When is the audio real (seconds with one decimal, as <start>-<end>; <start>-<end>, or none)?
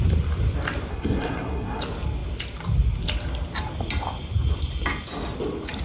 0.0-0.9; 1.8-5.8